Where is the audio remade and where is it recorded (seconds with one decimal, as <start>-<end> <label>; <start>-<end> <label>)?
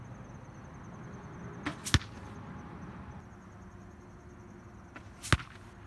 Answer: 0.0-5.9 recorded